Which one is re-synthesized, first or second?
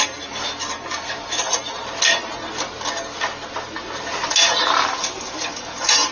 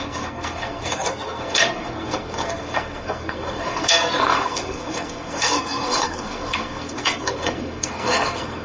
second